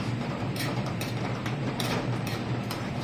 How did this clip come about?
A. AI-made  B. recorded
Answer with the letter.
A